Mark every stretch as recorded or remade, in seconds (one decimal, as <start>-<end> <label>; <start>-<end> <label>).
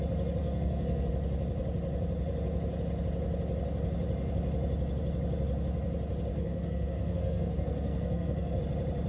0.0-0.4 recorded; 0.4-1.1 remade; 1.1-6.3 recorded; 6.3-8.6 remade; 8.6-9.1 recorded